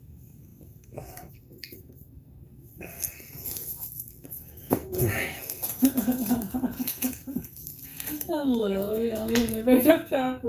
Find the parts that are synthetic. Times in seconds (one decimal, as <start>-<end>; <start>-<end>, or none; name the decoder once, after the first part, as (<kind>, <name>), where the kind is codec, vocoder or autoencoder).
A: 0.0-10.5 (codec, SNAC)